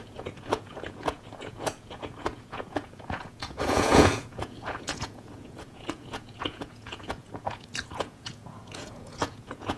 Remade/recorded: remade